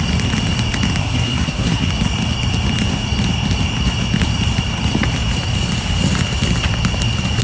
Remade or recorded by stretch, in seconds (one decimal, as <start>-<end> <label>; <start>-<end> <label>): 0.0-1.0 recorded; 1.0-1.9 remade; 1.9-7.4 recorded